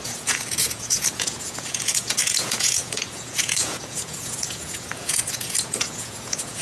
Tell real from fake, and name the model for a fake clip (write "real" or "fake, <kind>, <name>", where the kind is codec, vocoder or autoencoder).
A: fake, vocoder, Vocos